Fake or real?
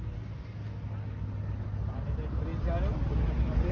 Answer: real